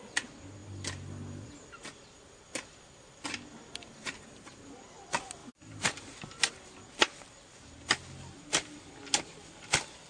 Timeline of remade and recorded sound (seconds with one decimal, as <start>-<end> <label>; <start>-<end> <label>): 0.0-10.1 recorded